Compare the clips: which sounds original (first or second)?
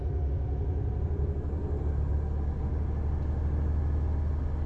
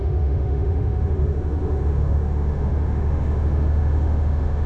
first